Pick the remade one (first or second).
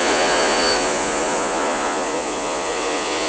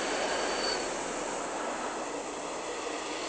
first